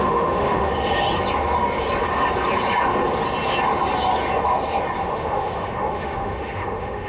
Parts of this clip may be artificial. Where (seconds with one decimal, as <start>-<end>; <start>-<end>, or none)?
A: 0.0-0.7; 5.0-7.1